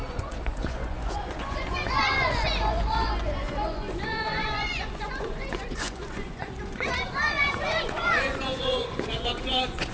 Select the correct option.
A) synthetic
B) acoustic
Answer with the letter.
A